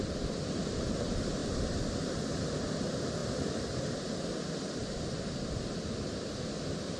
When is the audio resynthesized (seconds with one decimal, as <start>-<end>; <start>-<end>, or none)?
none